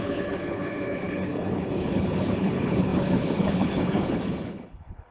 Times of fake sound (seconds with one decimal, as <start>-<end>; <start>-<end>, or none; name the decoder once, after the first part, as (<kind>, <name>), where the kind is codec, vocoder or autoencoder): 0.0-5.1 (codec, HILCodec)